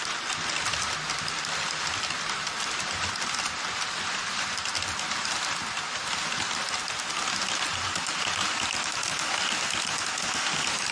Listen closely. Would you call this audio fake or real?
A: real